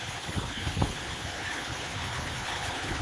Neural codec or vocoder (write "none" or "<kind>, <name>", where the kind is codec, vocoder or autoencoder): codec, HILCodec